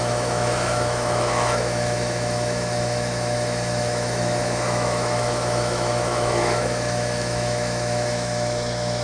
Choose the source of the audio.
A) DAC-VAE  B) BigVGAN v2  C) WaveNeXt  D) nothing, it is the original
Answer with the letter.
A